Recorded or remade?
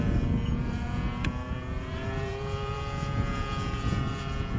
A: remade